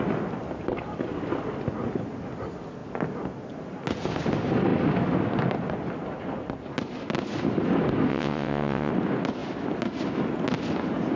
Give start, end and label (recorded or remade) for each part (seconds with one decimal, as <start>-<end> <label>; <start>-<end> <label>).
0.0-8.1 recorded; 8.1-8.9 remade; 8.9-11.2 recorded